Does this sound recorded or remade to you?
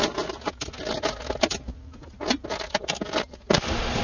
recorded